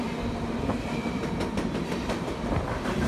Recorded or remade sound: recorded